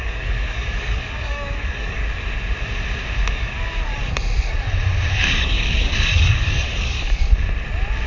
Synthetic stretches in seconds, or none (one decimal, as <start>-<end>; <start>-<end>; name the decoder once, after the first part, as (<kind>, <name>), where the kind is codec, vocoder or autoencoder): 0.0-2.0 (codec, DAC); 3.3-4.0; 5.1-7.2